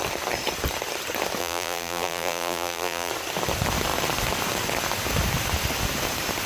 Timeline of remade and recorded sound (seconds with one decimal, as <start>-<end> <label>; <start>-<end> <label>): 0.0-1.4 recorded; 1.4-3.1 remade; 3.1-6.5 recorded